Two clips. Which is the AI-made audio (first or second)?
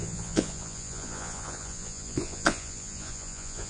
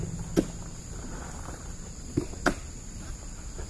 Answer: first